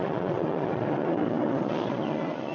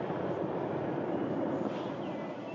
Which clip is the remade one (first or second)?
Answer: first